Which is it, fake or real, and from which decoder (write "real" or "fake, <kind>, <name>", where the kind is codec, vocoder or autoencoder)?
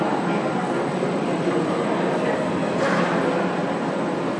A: real